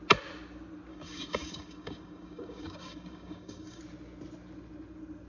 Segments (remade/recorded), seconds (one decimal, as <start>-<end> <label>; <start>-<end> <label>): 0.0-0.9 recorded; 0.9-3.8 remade; 3.8-5.3 recorded